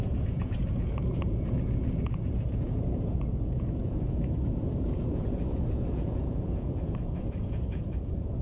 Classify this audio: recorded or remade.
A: remade